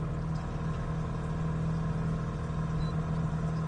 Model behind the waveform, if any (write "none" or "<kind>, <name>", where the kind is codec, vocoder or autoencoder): none